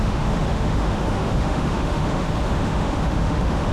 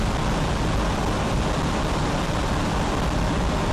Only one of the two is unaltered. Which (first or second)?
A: second